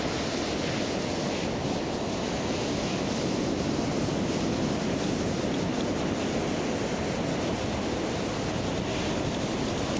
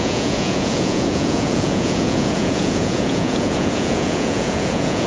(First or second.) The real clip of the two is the first